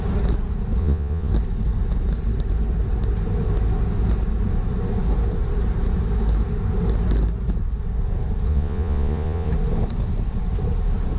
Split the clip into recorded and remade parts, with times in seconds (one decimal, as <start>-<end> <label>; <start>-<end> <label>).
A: 0.0-0.8 recorded; 0.8-1.3 remade; 1.3-8.5 recorded; 8.5-9.5 remade; 9.5-11.2 recorded